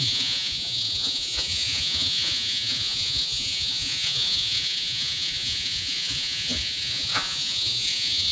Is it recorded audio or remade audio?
remade